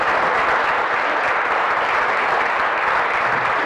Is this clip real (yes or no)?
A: yes